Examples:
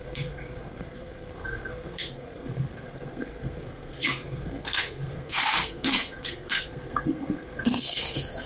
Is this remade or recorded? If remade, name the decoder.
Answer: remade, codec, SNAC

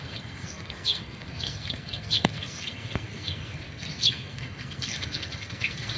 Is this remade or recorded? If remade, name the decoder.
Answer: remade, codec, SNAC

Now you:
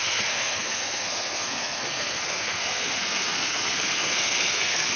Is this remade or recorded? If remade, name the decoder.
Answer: remade, codec, SNAC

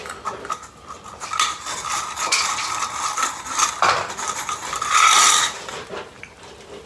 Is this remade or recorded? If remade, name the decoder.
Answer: recorded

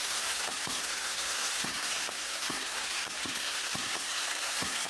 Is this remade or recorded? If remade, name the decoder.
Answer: remade, codec, SNAC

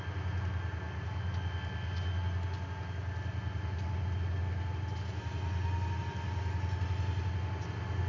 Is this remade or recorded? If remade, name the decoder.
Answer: recorded